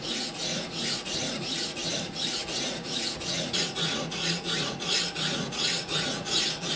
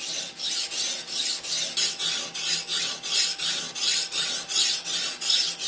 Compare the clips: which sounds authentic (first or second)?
second